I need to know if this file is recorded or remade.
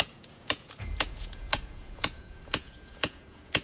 remade